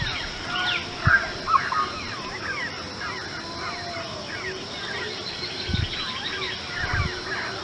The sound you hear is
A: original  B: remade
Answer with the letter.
A